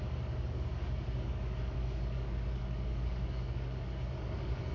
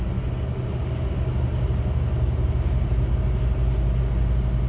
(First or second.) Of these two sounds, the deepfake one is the first